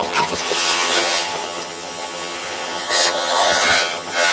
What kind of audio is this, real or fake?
fake